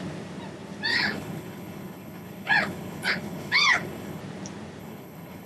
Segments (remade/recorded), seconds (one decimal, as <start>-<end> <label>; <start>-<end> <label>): 0.0-0.9 recorded; 0.9-4.2 remade; 4.2-4.8 recorded; 4.8-5.5 remade